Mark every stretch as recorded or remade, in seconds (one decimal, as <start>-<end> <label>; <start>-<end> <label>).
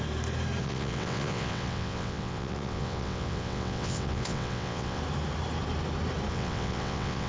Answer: 0.0-0.6 recorded; 0.6-5.0 remade; 5.0-6.3 recorded; 6.3-7.3 remade